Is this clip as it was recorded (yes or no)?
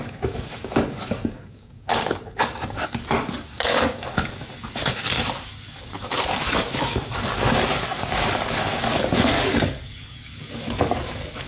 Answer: no